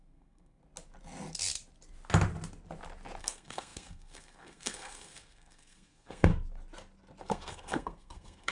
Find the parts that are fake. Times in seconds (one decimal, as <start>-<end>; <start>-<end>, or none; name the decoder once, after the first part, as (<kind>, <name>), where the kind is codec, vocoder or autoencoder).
0.0-0.6 (codec, SNAC); 3.2-6.3; 7.2-8.5